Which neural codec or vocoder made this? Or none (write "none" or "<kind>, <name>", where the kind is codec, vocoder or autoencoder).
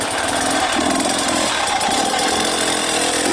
vocoder, BigVGAN v2